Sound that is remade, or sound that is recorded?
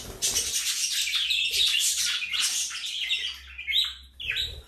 recorded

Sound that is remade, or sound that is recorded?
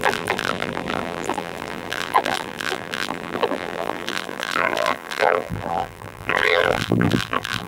remade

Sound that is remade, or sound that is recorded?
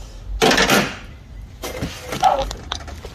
recorded